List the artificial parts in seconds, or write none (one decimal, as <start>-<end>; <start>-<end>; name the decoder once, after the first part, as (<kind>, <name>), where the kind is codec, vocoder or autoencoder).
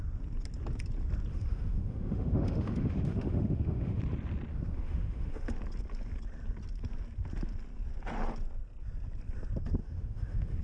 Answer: 1.3-4.0 (autoencoder, DAC-VAE); 4.5-5.5; 9.8-10.6